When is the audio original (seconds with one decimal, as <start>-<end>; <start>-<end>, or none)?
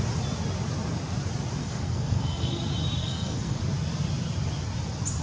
0.0-1.6; 2.6-3.0; 3.6-5.2